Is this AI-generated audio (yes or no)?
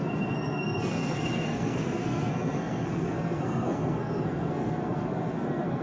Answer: yes